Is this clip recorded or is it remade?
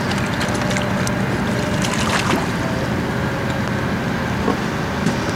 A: recorded